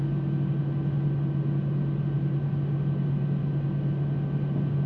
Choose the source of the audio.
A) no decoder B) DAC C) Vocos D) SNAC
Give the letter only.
A